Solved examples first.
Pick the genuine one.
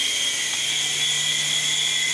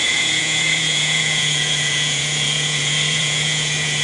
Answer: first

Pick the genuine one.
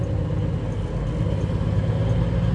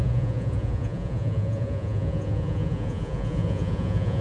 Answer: first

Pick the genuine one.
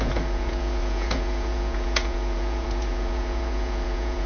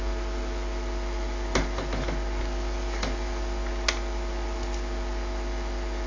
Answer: second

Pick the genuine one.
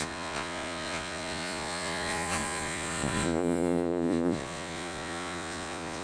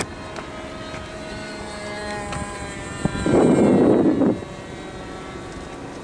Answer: second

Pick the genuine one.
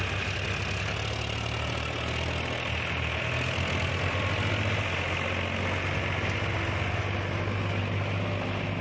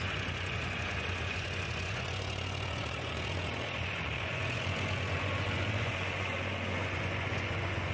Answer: first